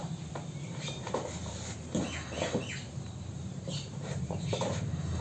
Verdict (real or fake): fake